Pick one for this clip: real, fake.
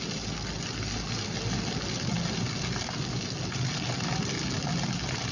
real